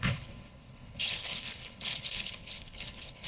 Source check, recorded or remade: remade